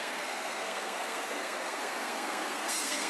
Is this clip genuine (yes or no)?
no